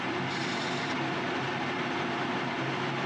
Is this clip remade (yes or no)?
no